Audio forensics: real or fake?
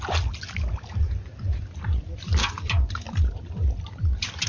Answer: real